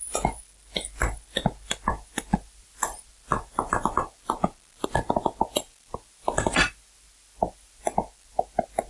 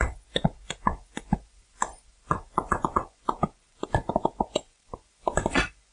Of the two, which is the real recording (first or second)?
first